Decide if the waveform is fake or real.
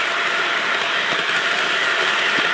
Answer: real